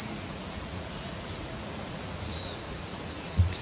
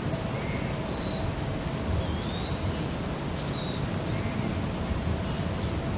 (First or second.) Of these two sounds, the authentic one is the second